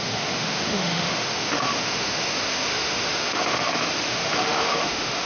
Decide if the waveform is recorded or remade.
remade